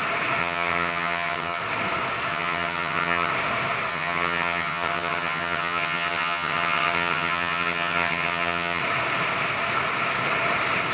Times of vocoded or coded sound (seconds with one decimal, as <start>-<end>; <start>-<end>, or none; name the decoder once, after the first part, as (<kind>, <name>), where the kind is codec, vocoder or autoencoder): 0.4-1.6 (vocoder, HiFi-GAN); 2.3-3.3; 3.9-8.8